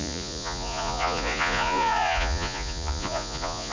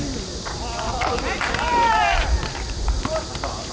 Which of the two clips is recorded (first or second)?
second